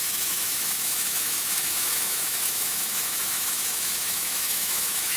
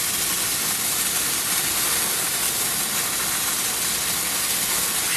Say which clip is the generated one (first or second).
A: first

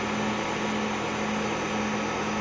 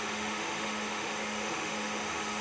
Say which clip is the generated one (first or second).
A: second